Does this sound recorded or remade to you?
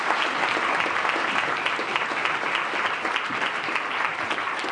recorded